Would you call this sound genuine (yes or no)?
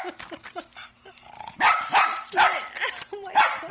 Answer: yes